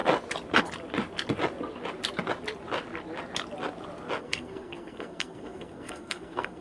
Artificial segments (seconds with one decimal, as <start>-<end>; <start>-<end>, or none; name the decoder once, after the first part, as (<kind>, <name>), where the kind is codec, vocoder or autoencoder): 4.2-6.6 (codec, SNAC)